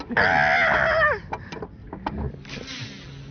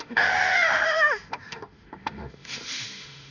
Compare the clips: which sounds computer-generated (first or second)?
second